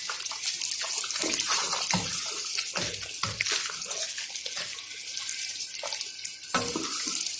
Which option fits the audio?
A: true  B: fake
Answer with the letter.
A